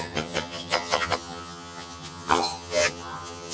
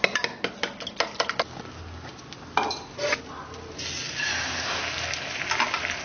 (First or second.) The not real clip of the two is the first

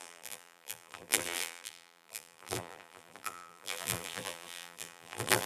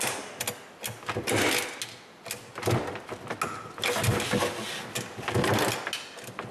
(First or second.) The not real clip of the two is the first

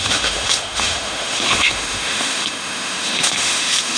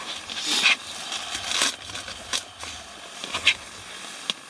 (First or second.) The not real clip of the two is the first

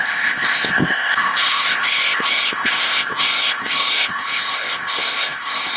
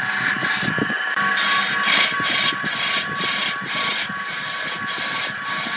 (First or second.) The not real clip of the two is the first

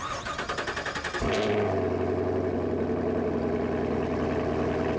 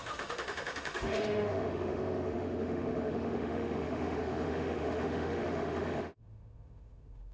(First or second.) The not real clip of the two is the second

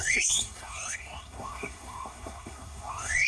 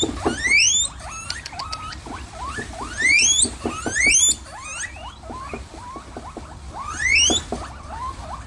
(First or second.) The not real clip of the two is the first